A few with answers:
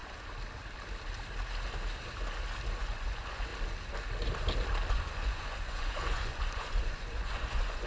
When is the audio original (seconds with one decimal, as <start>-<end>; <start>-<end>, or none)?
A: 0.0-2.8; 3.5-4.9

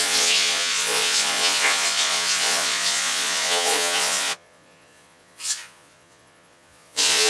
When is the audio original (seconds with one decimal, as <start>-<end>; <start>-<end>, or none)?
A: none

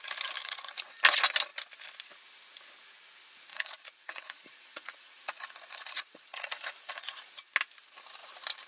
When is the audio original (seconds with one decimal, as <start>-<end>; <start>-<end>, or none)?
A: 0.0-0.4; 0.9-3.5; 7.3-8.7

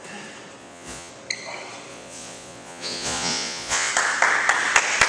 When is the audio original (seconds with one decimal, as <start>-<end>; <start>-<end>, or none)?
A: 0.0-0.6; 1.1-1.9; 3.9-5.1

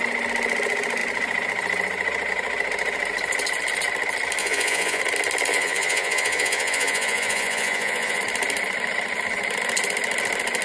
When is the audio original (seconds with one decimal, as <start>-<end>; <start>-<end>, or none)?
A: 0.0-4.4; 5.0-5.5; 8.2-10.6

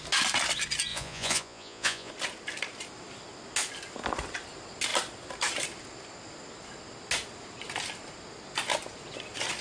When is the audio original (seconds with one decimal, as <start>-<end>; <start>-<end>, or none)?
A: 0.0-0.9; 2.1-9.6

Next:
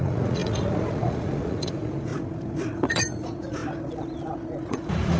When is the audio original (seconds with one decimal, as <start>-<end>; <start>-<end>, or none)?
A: 2.1-2.7; 3.6-4.6